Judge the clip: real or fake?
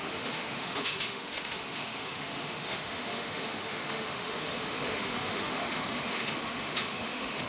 fake